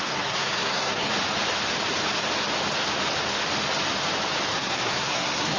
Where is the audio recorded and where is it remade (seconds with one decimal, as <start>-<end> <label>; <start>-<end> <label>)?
0.0-1.1 remade; 1.1-4.5 recorded; 4.5-5.6 remade